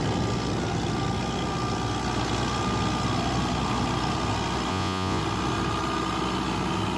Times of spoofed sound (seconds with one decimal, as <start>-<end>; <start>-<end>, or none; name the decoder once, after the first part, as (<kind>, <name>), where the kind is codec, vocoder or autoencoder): 4.7-5.2 (vocoder, Vocos)